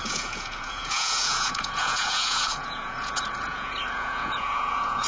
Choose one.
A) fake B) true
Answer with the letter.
A